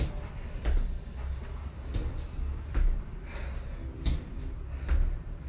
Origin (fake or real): real